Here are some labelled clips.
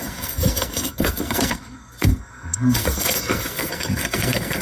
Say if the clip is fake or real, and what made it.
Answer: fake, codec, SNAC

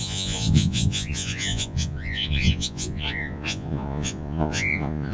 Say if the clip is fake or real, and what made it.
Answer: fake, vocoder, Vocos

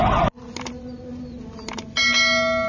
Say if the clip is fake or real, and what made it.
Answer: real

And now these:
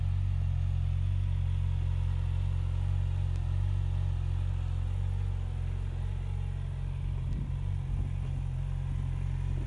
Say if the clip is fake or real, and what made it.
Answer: real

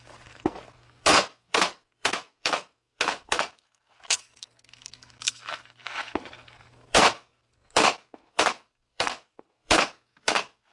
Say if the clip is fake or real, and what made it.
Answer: fake, codec, SNAC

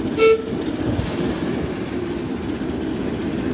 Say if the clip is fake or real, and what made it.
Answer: real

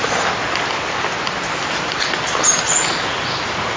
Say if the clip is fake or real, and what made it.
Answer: real